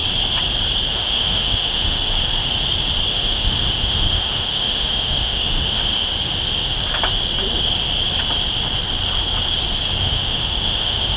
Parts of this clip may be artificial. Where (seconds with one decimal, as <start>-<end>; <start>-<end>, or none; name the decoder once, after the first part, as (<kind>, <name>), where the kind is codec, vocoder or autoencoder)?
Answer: 0.9-2.0 (autoencoder, DAC-VAE); 3.1-6.1; 10.0-11.2